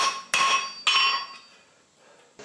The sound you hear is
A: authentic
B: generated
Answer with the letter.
A